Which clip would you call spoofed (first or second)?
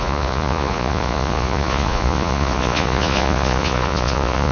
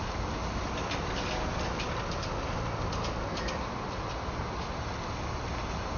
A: first